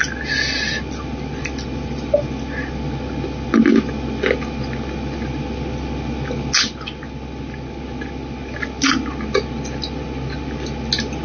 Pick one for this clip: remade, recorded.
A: recorded